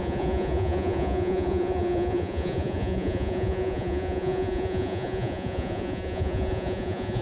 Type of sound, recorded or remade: remade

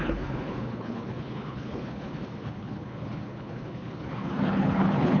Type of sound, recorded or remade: remade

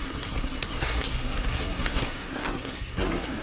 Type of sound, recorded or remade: remade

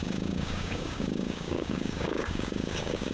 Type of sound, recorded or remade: remade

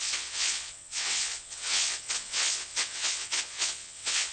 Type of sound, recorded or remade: remade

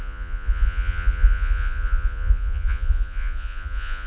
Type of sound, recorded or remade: remade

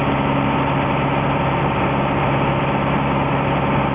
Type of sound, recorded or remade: recorded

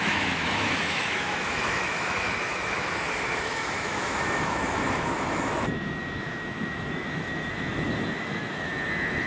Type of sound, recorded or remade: remade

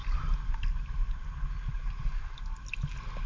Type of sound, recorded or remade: recorded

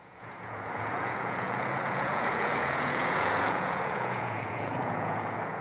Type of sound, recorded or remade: remade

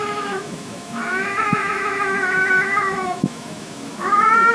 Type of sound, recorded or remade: remade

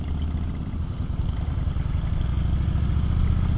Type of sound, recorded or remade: recorded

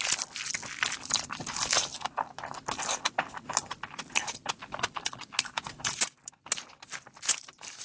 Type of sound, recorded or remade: recorded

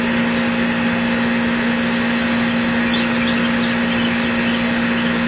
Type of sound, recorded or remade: recorded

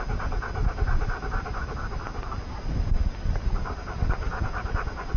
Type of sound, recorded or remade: recorded